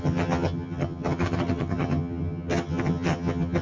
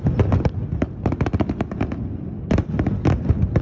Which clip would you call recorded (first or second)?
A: second